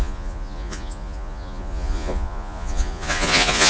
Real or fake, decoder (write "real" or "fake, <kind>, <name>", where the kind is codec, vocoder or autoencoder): fake, vocoder, Vocos